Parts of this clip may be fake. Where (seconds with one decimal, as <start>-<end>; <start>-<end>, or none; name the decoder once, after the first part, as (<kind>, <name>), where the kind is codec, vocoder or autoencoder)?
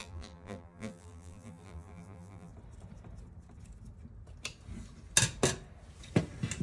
0.0-2.5 (vocoder, BigVGAN v2)